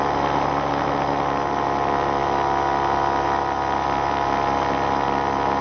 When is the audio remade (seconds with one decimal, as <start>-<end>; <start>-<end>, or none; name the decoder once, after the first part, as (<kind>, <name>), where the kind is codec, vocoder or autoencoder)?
none